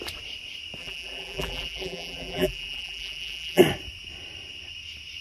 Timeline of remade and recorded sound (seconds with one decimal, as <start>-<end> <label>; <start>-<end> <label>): 0.0-0.8 recorded; 0.8-3.6 remade; 3.6-5.2 recorded